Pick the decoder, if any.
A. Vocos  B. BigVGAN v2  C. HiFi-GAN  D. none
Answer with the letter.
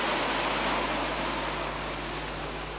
D